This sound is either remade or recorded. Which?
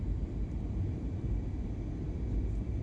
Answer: remade